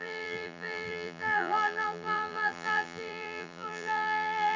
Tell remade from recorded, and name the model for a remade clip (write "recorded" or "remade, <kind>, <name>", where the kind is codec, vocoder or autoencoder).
remade, vocoder, BigVGAN v2